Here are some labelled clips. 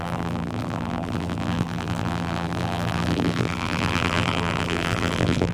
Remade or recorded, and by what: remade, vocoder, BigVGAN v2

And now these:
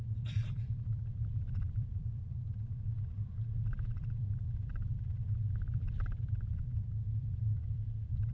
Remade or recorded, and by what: remade, vocoder, BigVGAN v2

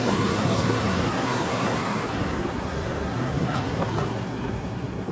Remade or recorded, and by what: remade, codec, SNAC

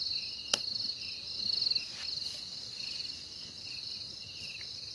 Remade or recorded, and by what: recorded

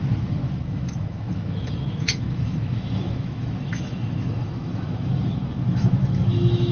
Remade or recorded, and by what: remade, autoencoder, DAC-VAE